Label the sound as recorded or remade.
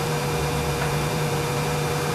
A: remade